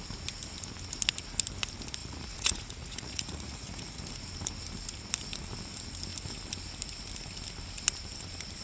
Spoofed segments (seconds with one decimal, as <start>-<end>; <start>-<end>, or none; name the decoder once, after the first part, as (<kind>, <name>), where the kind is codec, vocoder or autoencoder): 2.0-4.0 (vocoder, Vocos)